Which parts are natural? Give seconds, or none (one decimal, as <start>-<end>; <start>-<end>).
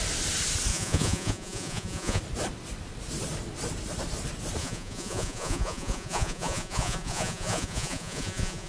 0.0-0.7; 2.2-4.6